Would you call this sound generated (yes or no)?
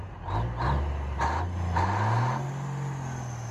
no